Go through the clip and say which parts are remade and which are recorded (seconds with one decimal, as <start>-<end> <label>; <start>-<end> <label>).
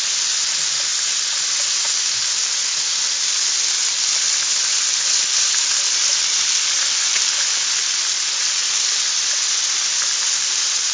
0.0-10.9 recorded